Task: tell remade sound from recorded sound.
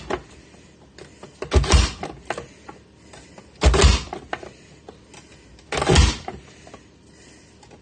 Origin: recorded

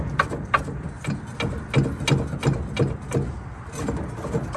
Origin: recorded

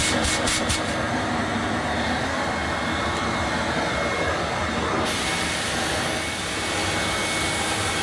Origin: recorded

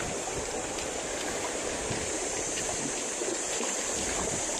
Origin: remade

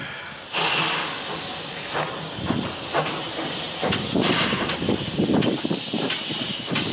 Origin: recorded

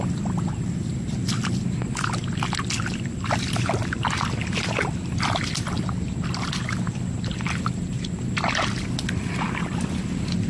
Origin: recorded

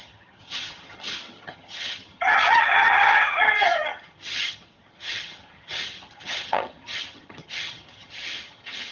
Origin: remade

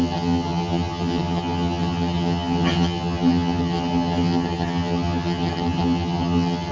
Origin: remade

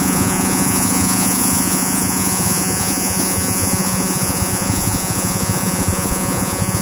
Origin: remade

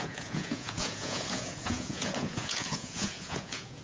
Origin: remade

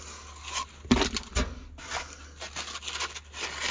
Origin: recorded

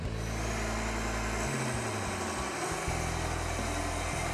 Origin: recorded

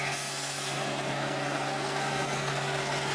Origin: remade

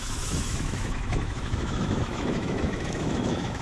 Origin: remade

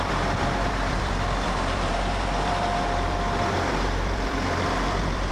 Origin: remade